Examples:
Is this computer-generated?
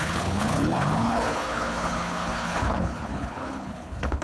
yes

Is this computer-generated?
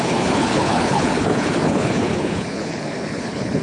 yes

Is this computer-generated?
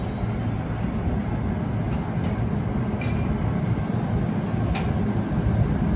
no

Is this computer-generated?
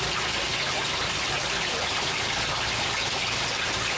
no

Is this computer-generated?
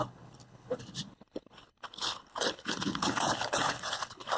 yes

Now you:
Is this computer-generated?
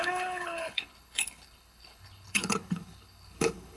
yes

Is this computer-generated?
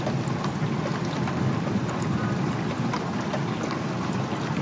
no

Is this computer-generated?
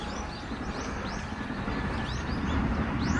no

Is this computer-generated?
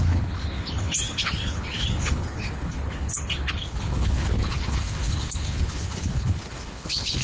yes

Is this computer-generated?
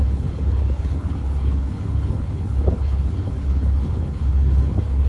yes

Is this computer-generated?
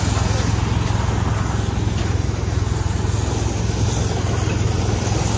no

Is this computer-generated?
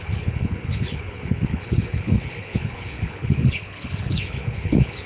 yes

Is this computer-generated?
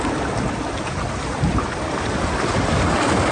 no